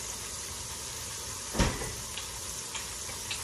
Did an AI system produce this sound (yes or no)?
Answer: no